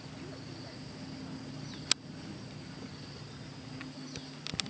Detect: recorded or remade recorded